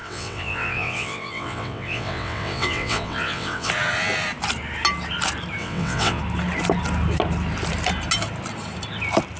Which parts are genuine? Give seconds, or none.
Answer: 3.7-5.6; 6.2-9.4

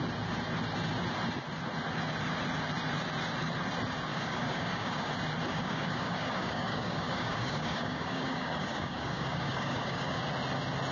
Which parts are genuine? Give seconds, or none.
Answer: 0.0-4.1; 5.1-5.5; 10.2-10.9

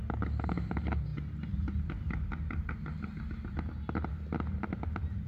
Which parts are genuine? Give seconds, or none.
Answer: 0.0-5.3